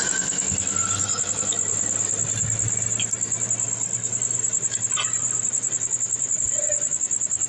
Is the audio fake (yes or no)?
no